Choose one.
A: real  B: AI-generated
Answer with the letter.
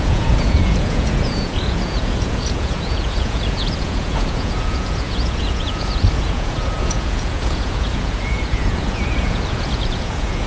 B